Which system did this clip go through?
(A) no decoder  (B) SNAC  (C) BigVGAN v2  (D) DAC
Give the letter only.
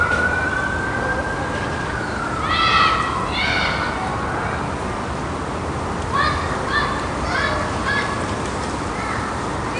A